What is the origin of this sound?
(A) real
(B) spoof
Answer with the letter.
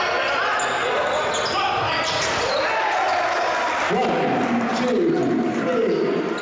A